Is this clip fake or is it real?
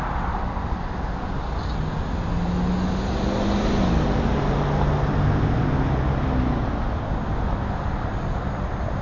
real